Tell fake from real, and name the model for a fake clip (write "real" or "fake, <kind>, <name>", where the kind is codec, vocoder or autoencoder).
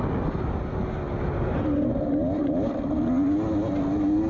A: real